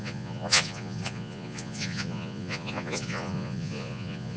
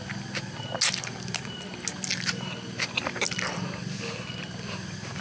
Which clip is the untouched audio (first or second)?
second